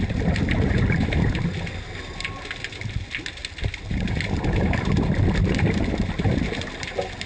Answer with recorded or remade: recorded